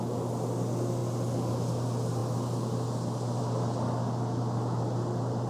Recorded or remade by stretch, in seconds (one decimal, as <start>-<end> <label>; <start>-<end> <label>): 0.0-5.5 recorded